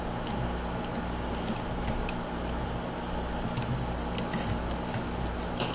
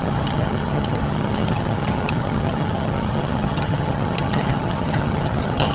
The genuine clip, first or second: first